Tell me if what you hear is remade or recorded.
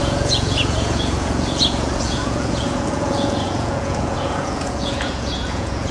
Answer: remade